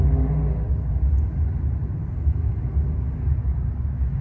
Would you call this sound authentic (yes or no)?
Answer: yes